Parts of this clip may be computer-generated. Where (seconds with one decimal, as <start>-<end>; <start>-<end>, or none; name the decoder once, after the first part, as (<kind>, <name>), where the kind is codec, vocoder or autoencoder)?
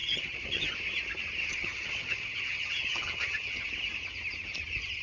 0.0-0.7 (vocoder, HiFi-GAN); 1.5-3.7